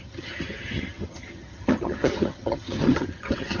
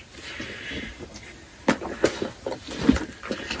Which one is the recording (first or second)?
second